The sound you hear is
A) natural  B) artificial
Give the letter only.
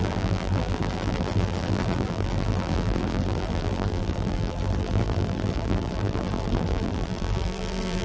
B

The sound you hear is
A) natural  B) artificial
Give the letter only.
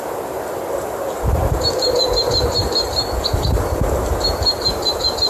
B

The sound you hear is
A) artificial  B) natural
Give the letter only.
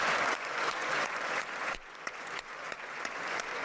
A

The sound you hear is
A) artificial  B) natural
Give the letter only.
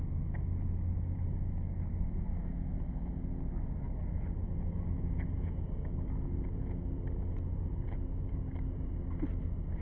B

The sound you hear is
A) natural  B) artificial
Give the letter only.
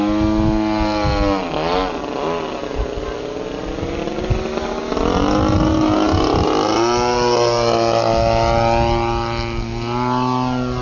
A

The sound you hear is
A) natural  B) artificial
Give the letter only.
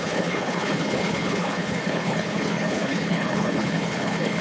B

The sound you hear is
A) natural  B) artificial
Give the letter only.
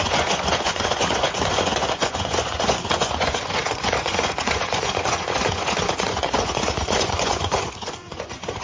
B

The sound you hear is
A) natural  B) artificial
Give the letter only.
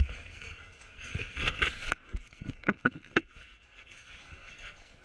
B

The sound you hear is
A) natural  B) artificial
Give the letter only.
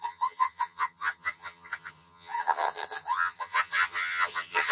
B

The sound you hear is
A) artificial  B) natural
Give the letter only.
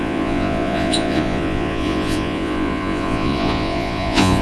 A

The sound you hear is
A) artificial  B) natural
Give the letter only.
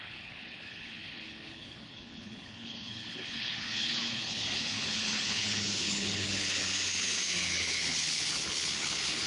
A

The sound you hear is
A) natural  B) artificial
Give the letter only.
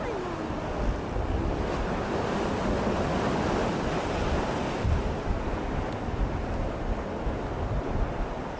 A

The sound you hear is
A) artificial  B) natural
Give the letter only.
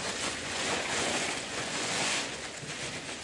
A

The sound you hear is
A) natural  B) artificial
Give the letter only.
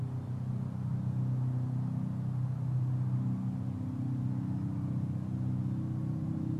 A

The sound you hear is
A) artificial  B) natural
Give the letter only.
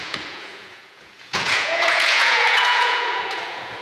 A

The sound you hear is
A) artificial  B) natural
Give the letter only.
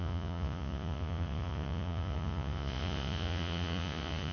A